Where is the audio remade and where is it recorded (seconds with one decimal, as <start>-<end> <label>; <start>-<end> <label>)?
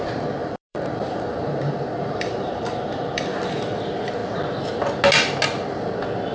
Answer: 0.0-0.4 recorded; 0.4-3.8 remade; 3.8-6.3 recorded